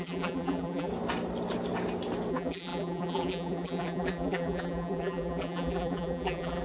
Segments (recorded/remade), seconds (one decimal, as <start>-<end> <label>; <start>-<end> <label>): 0.0-0.9 remade; 0.9-2.3 recorded; 2.3-6.6 remade